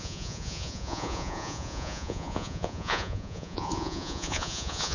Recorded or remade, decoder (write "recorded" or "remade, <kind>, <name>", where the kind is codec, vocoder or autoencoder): remade, vocoder, Vocos